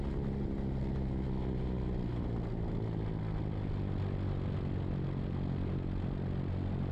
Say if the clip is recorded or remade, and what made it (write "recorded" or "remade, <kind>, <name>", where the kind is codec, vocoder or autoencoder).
recorded